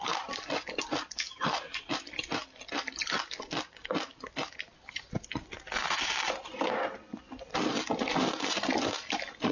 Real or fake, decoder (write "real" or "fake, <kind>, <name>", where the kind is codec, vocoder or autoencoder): real